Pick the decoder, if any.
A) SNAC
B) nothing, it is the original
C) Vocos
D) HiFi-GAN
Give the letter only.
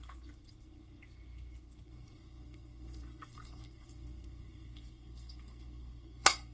A